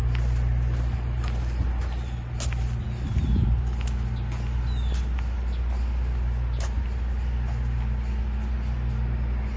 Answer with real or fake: real